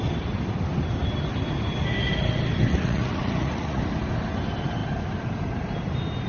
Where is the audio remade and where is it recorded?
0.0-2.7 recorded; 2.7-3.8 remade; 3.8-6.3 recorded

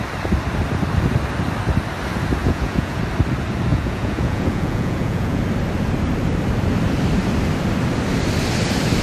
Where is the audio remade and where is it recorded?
0.0-2.4 recorded; 2.4-3.0 remade; 3.0-3.7 recorded; 3.7-5.4 remade; 5.4-9.0 recorded

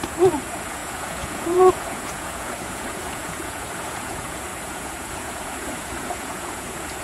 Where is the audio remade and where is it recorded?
0.0-7.0 remade

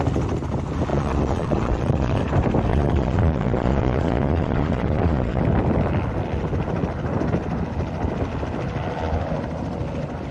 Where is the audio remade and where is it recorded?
0.0-0.9 recorded; 0.9-2.2 remade; 2.2-2.7 recorded; 2.7-5.4 remade; 5.4-10.3 recorded

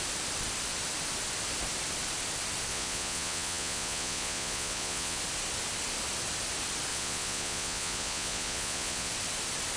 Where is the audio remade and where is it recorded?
0.0-2.7 recorded; 2.7-5.2 remade; 5.2-6.9 recorded; 6.9-9.1 remade; 9.1-9.8 recorded

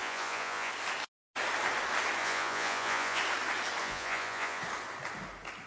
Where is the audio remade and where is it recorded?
0.0-0.7 remade; 0.7-2.2 recorded; 2.2-3.2 remade; 3.2-3.8 recorded; 3.8-4.6 remade; 4.6-5.7 recorded